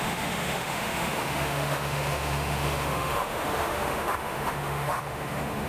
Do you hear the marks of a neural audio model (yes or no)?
yes